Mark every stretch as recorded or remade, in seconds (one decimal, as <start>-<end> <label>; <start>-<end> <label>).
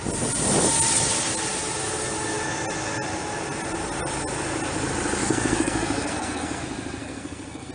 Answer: 0.0-5.2 recorded; 5.2-6.6 remade; 6.6-7.0 recorded; 7.0-7.7 remade